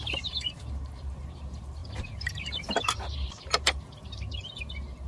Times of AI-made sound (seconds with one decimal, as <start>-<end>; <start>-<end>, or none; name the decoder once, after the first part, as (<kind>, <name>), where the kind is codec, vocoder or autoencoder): 0.0-5.1 (vocoder, BigVGAN v2)